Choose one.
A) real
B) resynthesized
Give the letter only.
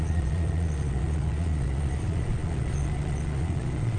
B